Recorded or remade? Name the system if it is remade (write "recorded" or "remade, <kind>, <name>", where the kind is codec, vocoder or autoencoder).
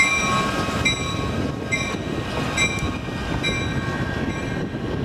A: recorded